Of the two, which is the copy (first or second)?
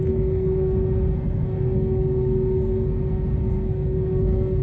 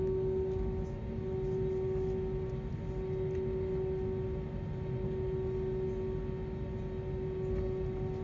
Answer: first